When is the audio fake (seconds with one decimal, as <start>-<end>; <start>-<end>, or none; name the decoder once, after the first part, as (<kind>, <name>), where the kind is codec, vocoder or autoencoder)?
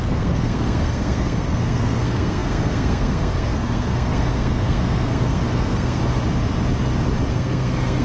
0.0-6.0 (codec, SNAC); 7.3-8.0